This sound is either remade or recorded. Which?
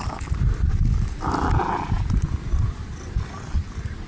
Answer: recorded